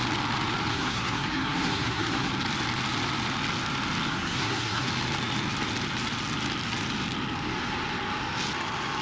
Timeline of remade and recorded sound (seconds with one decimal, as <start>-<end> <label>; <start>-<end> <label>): 0.0-0.7 recorded; 0.7-2.3 remade; 2.3-4.1 recorded; 4.1-4.9 remade; 4.9-9.0 recorded